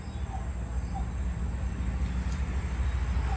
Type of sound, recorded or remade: recorded